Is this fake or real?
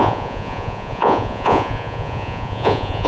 fake